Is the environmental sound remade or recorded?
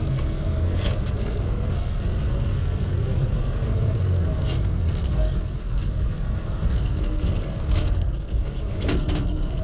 remade